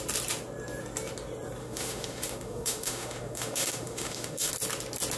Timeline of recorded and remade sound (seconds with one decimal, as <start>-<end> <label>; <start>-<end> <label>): 0.0-1.6 recorded; 1.6-4.5 remade; 4.5-5.2 recorded